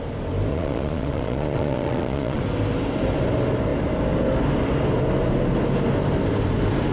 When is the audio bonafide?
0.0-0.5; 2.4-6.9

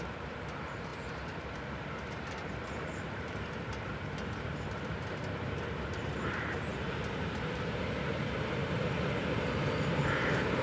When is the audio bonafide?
8.6-9.3

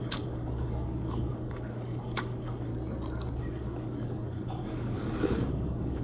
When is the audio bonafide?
2.7-3.4

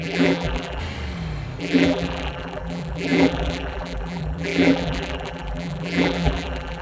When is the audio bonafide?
0.8-1.6

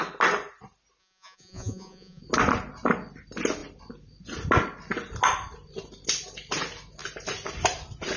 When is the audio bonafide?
0.0-1.0; 2.2-8.2

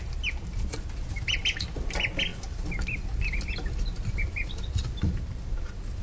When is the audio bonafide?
0.0-6.0

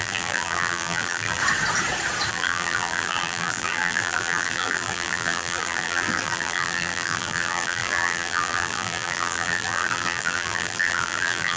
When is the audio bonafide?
1.4-2.3

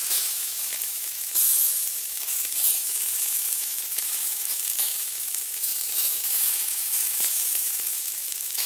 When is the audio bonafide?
none